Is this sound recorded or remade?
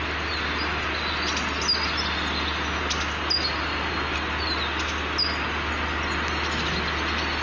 recorded